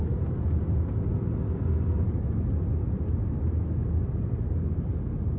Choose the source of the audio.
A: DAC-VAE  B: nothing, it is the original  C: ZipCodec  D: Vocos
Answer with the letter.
B